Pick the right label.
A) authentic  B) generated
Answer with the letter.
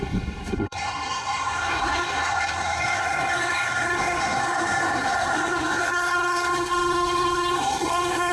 B